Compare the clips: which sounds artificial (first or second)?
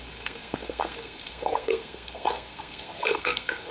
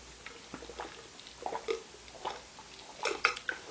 first